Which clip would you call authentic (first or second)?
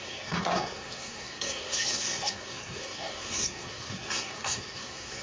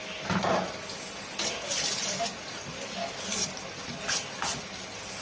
second